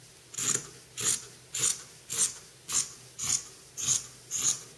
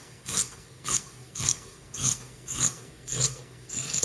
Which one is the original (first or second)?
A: first